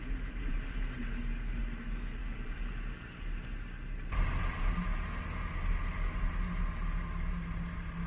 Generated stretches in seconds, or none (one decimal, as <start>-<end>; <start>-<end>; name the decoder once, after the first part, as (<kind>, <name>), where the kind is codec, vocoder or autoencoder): 0.5-1.6 (vocoder, BigVGAN v2); 2.2-4.6